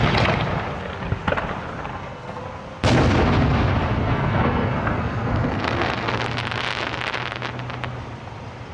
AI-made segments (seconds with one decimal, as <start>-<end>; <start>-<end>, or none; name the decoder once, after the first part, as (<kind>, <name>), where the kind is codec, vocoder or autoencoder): 1.9-2.4 (codec, SNAC); 4.0-6.1